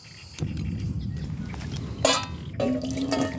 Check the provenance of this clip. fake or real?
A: real